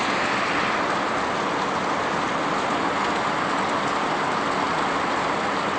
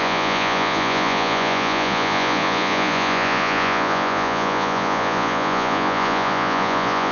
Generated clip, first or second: second